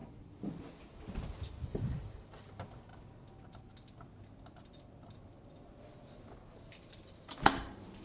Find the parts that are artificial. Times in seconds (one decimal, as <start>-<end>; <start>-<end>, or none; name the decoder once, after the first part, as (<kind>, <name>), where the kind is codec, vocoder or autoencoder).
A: 1.7-2.5 (vocoder, BigVGAN v2)

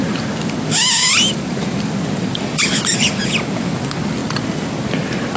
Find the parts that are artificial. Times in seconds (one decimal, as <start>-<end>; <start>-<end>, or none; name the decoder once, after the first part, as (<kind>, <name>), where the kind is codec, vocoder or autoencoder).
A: none